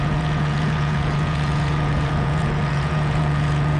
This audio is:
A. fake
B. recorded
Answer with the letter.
A